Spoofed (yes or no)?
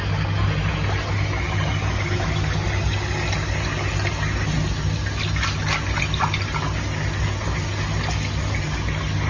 no